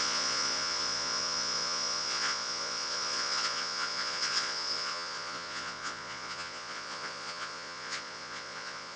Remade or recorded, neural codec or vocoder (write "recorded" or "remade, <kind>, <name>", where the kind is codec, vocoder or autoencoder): remade, vocoder, Vocos